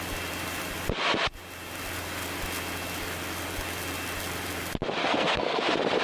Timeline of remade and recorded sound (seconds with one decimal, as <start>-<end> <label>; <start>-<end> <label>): 0.0-5.0 recorded; 5.0-5.6 remade; 5.6-6.0 recorded